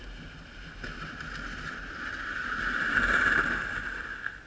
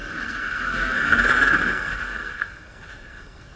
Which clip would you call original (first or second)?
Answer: first